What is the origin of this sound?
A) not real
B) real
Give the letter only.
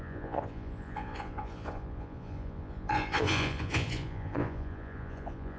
A